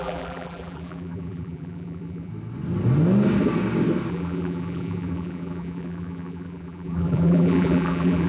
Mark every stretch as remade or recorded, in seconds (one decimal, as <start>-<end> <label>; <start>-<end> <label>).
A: 0.0-2.3 remade; 2.3-4.1 recorded; 4.1-8.3 remade